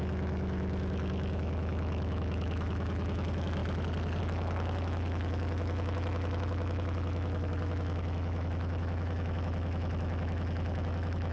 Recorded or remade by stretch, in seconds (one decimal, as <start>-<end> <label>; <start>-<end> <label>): 0.0-3.6 remade; 3.6-4.2 recorded; 4.2-11.3 remade